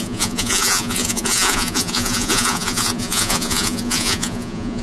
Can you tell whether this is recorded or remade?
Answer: remade